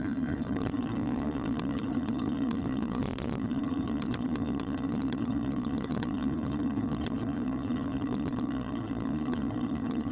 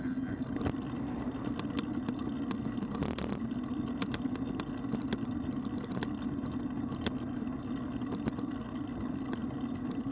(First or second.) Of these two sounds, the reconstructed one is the first